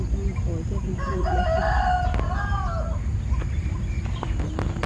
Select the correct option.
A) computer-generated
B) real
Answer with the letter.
B